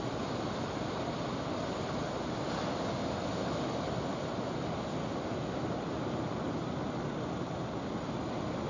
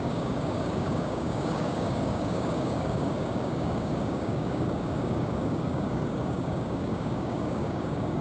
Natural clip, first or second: first